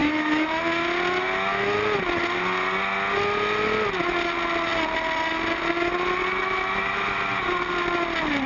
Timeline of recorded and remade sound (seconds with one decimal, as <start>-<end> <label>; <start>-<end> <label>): 0.0-0.6 remade; 0.6-8.5 recorded